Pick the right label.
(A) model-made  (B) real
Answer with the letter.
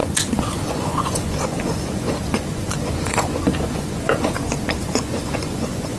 A